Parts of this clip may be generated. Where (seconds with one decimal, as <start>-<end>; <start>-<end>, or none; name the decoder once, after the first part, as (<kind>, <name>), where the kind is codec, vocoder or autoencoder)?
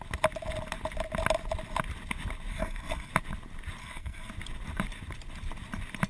2.5-3.1 (codec, SNAC); 3.8-4.3